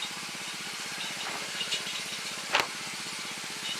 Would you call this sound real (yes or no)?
yes